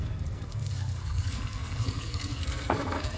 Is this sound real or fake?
fake